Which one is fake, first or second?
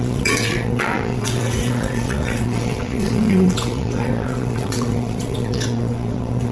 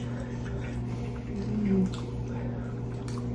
first